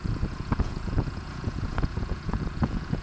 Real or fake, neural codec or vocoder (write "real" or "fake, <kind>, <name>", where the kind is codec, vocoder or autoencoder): fake, vocoder, Vocos